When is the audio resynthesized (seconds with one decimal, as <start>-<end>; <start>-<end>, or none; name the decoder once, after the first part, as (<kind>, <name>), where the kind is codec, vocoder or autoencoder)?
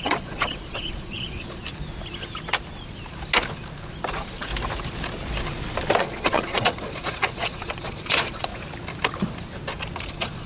0.0-1.6 (vocoder, Vocos); 4.1-4.5; 6.0-8.5; 10.1-10.5